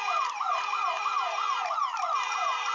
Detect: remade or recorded remade